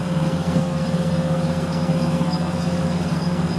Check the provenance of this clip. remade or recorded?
remade